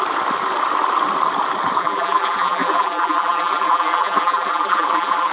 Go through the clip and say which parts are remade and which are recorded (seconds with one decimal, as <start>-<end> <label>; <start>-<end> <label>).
0.0-1.8 recorded; 1.8-5.3 remade